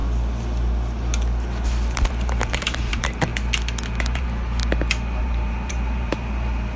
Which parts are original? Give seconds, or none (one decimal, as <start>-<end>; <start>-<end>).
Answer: 0.0-2.1; 3.3-4.0; 4.6-5.2